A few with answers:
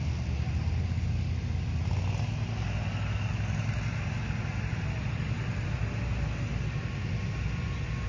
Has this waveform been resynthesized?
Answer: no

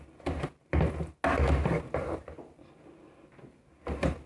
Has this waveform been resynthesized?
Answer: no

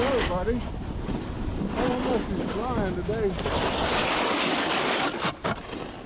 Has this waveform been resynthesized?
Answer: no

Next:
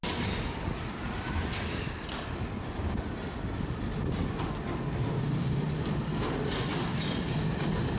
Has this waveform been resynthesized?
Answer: no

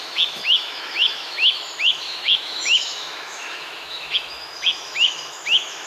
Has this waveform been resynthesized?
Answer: yes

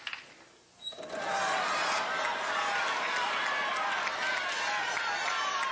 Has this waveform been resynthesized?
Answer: no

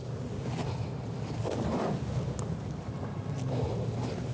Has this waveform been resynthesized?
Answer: no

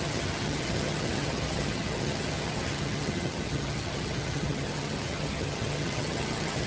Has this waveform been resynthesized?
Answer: yes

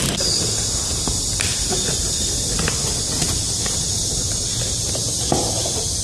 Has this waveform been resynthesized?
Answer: no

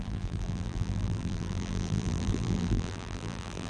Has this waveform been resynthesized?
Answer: yes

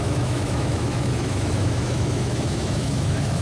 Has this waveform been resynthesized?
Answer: yes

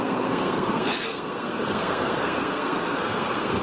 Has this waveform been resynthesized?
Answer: yes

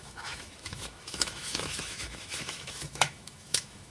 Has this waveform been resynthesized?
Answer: yes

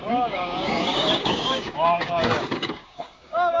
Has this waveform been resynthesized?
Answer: yes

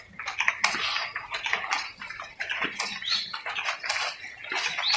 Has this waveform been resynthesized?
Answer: no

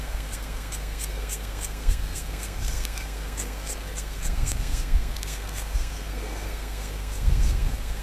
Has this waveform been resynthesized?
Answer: yes